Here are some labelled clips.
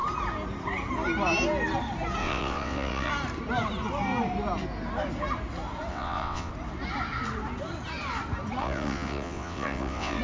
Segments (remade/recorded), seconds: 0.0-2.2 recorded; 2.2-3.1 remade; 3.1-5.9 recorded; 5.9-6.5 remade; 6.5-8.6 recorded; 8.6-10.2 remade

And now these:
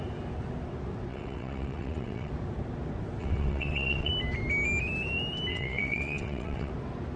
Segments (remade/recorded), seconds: 0.0-1.1 recorded; 1.1-2.3 remade; 2.3-3.2 recorded; 3.2-4.1 remade; 4.1-5.5 recorded; 5.5-6.7 remade; 6.7-7.2 recorded

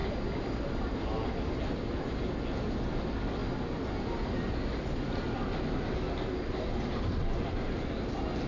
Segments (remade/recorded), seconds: 0.0-8.5 recorded

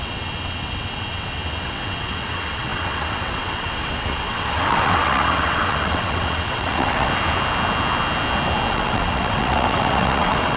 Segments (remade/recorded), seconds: 0.0-7.1 remade; 7.1-8.7 recorded; 8.7-10.6 remade

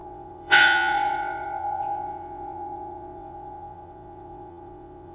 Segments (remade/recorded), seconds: 0.0-5.1 remade

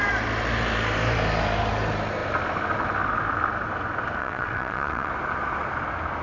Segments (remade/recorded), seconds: 0.0-4.2 recorded; 4.2-5.1 remade; 5.1-6.2 recorded